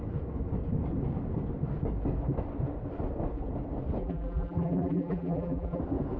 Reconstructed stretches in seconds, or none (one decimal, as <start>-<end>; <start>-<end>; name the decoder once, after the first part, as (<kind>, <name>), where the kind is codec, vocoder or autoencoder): 4.0-5.8 (vocoder, BigVGAN v2)